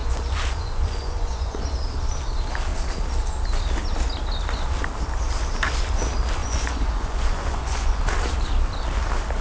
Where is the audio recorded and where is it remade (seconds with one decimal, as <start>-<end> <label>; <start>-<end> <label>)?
0.0-1.6 remade; 1.6-6.4 recorded; 6.4-8.0 remade; 8.0-9.4 recorded

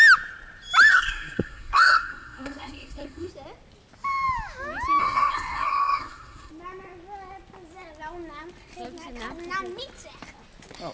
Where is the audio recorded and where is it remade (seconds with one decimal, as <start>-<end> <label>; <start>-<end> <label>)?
0.0-0.9 recorded; 0.9-3.3 remade; 3.3-5.0 recorded; 5.0-6.5 remade; 6.5-10.9 recorded